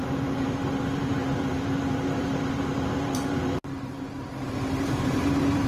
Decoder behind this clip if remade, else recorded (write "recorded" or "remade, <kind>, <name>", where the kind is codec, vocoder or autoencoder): remade, vocoder, BigVGAN v2